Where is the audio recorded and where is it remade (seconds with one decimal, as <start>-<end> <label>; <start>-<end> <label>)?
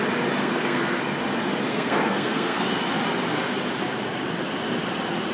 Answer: 0.0-0.4 recorded; 0.4-1.0 remade; 1.0-1.7 recorded; 1.7-2.8 remade; 2.8-5.3 recorded